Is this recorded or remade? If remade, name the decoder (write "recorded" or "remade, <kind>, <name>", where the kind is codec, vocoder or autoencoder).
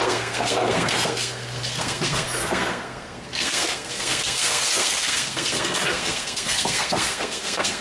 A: remade, codec, SNAC